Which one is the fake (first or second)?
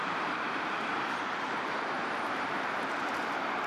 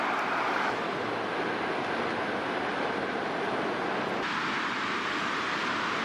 first